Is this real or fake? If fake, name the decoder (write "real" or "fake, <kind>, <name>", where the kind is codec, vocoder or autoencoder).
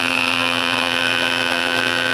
fake, vocoder, BigVGAN v2